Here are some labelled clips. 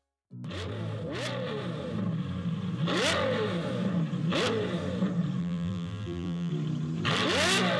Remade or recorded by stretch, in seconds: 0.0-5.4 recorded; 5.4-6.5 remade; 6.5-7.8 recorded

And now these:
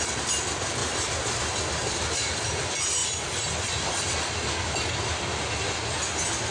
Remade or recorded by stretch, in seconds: 0.0-0.8 recorded; 0.8-2.3 remade; 2.3-6.5 recorded

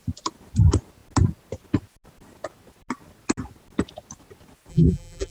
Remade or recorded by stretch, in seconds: 0.0-4.7 recorded; 4.7-5.3 remade

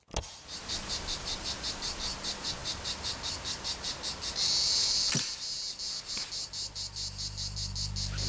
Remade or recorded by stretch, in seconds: 0.0-8.3 recorded

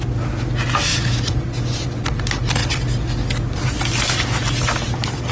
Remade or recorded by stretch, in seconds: 0.0-5.3 recorded

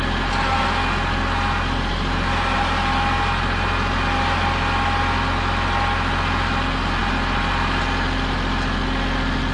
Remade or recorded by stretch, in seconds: 0.0-9.5 recorded

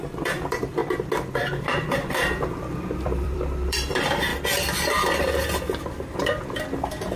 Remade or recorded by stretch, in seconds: 0.0-0.8 remade; 0.8-1.4 recorded; 1.4-4.3 remade; 4.3-6.4 recorded; 6.4-7.2 remade

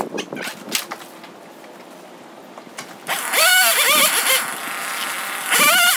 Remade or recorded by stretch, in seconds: 0.0-4.8 recorded; 4.8-5.6 remade; 5.6-6.0 recorded